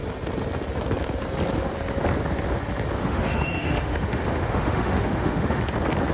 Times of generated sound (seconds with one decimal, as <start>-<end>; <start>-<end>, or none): 3.0-5.6